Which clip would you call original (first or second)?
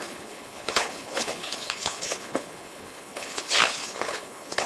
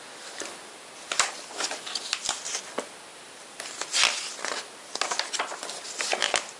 second